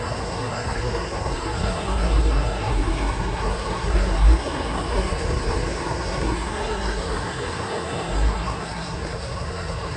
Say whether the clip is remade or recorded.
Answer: remade